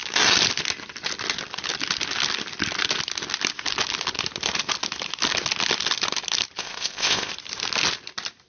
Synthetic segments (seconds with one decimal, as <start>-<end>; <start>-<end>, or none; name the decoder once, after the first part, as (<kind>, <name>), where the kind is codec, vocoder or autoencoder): 6.6-7.3 (codec, ZipCodec)